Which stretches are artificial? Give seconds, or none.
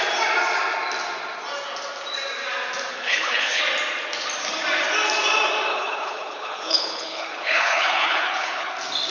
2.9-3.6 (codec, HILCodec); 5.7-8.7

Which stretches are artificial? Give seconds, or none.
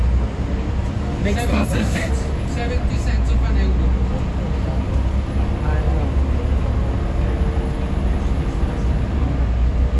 1.5-2.1 (codec, SNAC)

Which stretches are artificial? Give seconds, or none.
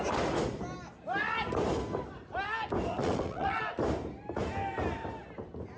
3.0-3.6 (vocoder, WaveNeXt)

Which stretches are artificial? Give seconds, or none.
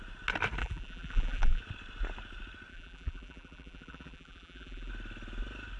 0.6-1.6 (vocoder, BigVGAN v2); 2.7-4.9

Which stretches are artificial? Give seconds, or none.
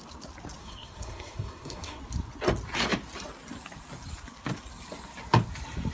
0.6-2.0 (codec, SNAC)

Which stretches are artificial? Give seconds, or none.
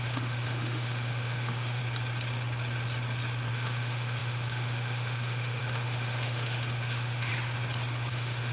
0.0-1.8 (autoencoder, DAC-VAE); 3.5-7.3; 8.1-8.5